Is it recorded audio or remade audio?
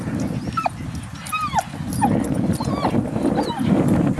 recorded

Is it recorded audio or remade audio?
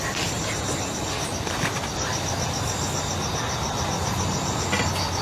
recorded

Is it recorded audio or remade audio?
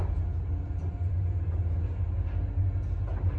recorded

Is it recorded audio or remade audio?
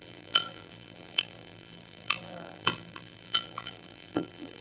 remade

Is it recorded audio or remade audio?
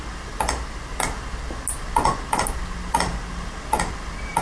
recorded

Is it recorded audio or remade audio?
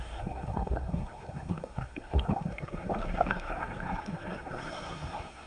remade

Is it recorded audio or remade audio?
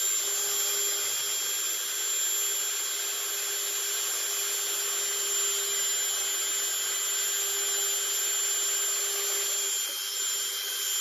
recorded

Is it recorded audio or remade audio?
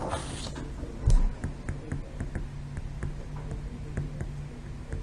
recorded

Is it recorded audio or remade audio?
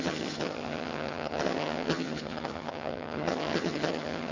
remade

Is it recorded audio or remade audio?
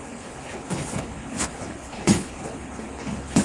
remade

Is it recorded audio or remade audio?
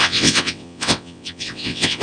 remade